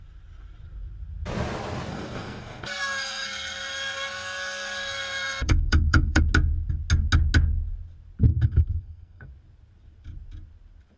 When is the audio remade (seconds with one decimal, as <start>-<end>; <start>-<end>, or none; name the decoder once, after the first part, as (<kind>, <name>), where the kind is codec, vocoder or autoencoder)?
1.9-6.2 (codec, SNAC); 8.3-9.3